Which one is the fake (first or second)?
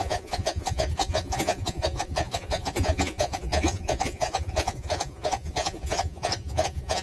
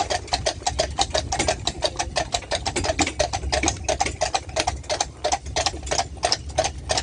first